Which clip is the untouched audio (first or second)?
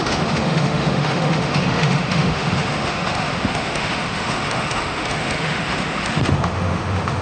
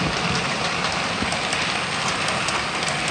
second